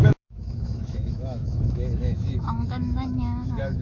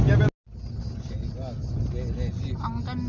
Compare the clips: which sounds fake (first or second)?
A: first